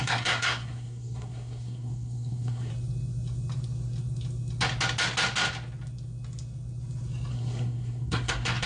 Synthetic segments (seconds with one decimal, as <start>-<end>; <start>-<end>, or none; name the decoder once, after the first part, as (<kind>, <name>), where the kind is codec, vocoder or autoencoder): 0.0-2.7 (codec, SNAC); 7.3-8.7